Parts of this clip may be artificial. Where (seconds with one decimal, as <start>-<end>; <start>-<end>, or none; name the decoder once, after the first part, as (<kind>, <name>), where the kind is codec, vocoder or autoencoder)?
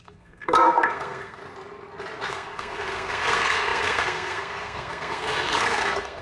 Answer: 0.0-1.4 (codec, SNAC); 2.3-6.2